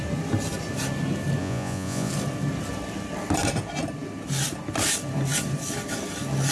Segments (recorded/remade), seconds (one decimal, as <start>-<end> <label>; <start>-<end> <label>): 0.0-1.4 recorded; 1.4-2.1 remade; 2.1-6.5 recorded